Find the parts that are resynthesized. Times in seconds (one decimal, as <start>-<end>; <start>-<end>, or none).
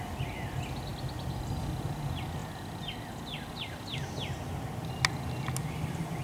none